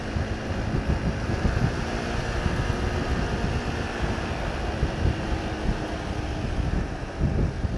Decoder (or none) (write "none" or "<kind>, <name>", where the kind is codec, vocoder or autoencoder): none